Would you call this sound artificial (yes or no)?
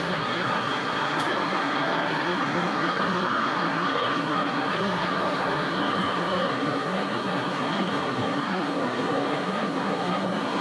yes